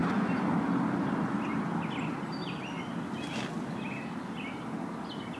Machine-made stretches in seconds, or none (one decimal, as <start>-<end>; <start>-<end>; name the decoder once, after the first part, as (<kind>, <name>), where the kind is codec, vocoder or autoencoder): none